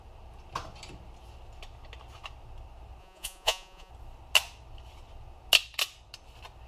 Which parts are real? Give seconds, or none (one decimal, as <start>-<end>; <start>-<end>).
0.0-3.0; 3.9-6.7